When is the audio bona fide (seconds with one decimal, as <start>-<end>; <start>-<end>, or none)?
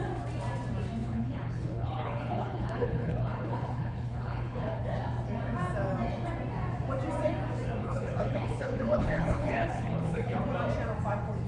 0.0-1.0; 4.8-7.8; 10.4-11.5